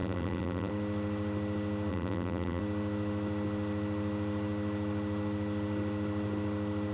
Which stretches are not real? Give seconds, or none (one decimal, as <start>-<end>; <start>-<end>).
0.0-0.7; 1.9-2.6